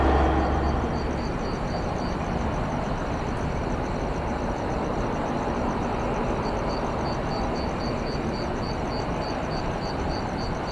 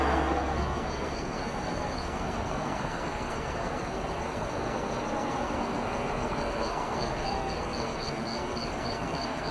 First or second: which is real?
first